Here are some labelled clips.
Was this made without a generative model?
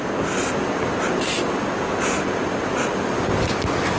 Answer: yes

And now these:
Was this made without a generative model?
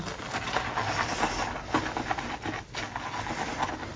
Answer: yes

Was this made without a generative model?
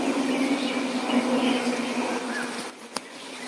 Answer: no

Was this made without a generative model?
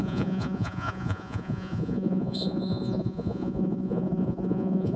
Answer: no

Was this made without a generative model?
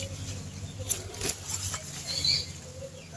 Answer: yes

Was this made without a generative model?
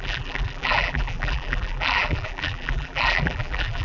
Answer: no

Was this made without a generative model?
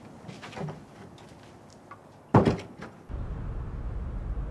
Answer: yes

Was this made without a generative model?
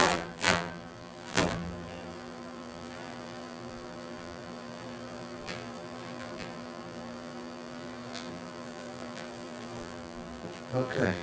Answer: no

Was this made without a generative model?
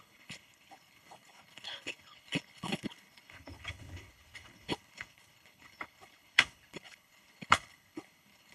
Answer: no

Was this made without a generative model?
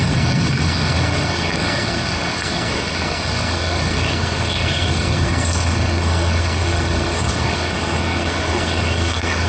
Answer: no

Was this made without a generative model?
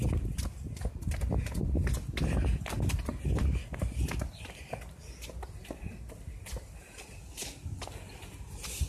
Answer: yes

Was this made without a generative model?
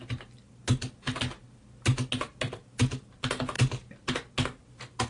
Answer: yes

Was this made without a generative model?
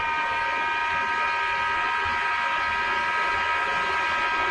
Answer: yes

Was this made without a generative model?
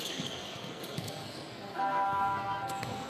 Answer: no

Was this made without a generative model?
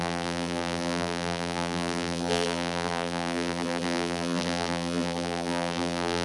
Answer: no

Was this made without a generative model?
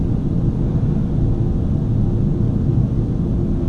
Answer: yes